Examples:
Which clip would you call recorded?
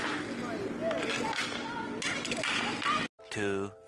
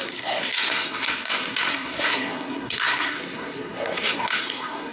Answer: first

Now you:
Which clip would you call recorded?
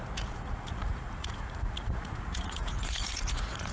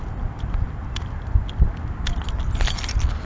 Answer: second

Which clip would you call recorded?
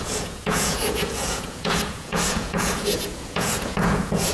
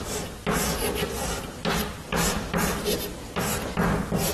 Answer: second